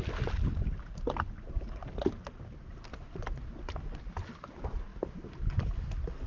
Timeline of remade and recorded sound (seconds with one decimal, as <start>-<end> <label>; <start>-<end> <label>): 0.0-6.3 recorded